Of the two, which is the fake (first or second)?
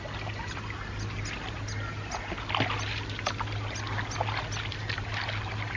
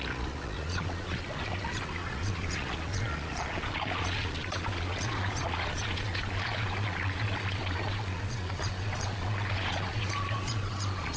second